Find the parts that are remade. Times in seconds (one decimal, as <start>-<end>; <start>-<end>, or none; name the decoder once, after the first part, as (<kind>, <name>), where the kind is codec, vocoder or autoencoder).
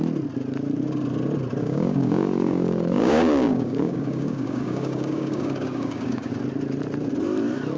1.6-6.3 (codec, DAC)